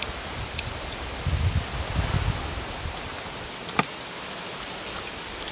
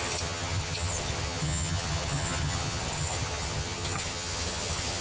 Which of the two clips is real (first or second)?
first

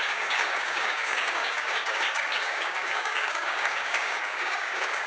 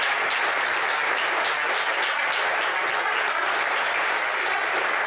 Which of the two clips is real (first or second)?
second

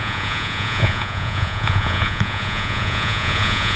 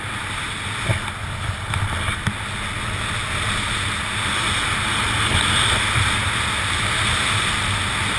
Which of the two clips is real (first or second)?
second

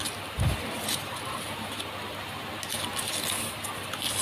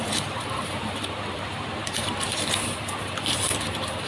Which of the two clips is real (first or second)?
first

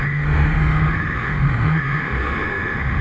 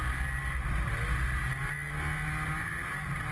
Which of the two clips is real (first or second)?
second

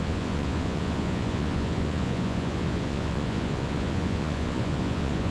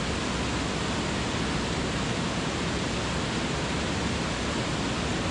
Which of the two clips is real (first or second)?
second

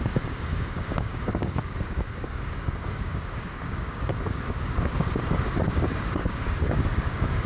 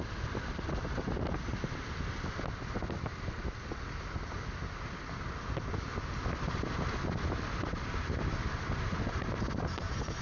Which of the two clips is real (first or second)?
second